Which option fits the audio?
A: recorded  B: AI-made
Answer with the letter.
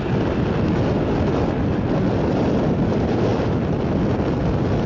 A